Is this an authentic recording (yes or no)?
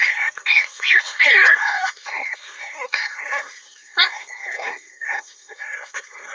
no